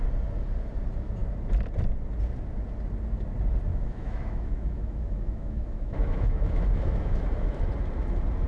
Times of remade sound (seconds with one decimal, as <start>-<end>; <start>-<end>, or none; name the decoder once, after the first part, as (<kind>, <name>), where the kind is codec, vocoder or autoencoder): 3.7-7.6 (autoencoder, DAC-VAE)